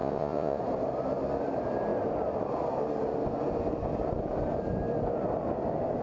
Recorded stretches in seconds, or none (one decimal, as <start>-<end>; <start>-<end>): 0.6-6.0